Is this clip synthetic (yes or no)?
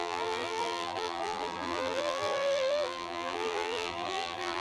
yes